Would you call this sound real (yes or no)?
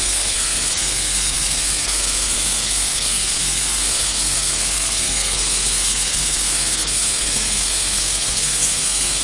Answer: no